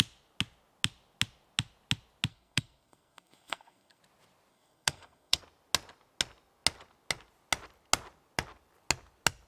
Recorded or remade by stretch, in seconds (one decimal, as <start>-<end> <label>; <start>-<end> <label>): 0.0-2.3 recorded; 2.3-4.0 remade; 4.0-4.5 recorded; 4.5-5.4 remade; 5.4-9.5 recorded